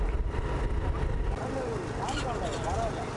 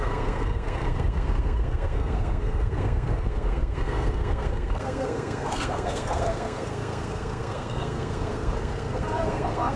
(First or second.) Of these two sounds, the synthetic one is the second